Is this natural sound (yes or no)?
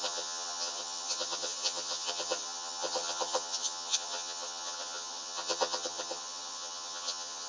no